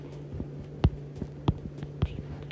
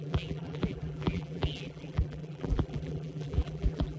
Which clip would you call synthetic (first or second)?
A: second